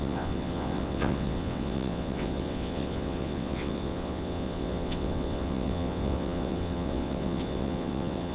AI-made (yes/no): yes